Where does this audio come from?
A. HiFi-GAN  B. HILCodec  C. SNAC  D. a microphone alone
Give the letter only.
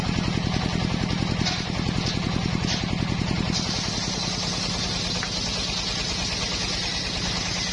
D